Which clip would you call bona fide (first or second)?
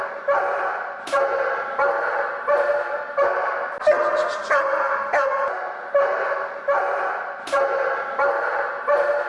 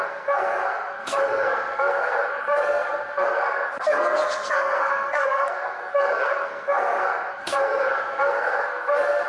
first